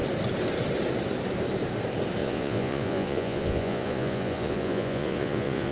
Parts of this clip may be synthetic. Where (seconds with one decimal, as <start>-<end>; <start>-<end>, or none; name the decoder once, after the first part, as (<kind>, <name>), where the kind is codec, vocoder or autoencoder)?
2.2-5.7 (vocoder, Vocos)